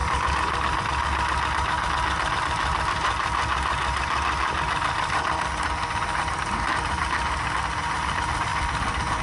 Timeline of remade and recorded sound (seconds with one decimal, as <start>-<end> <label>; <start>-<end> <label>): 0.0-9.2 recorded